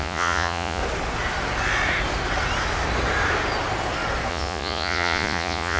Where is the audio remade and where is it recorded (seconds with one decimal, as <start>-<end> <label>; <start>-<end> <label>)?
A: 0.0-0.8 remade; 0.8-4.3 recorded; 4.3-5.8 remade